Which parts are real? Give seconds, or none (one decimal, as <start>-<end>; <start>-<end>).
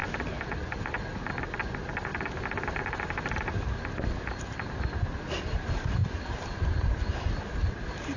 0.0-1.6; 2.1-5.4